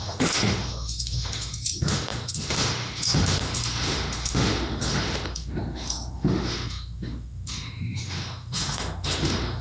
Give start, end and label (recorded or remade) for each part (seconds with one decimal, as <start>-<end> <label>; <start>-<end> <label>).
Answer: 0.0-9.6 remade